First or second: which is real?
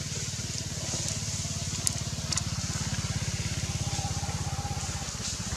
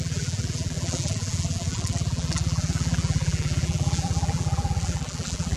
first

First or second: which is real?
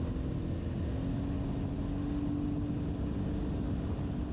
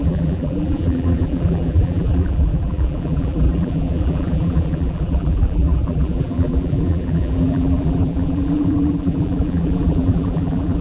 first